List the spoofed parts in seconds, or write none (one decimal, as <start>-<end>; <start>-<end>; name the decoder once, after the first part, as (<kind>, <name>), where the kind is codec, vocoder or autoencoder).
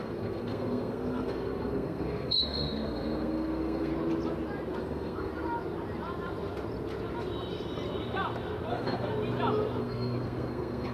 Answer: 0.0-3.9 (codec, SNAC); 4.8-5.3; 8.7-9.1; 9.8-10.9